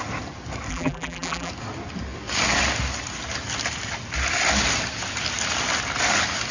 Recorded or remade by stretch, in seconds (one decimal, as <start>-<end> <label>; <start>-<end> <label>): 0.0-0.7 recorded; 0.7-1.5 remade; 1.5-6.5 recorded